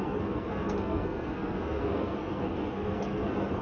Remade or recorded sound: remade